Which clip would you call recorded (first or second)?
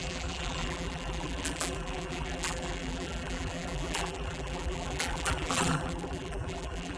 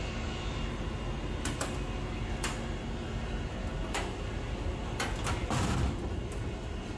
second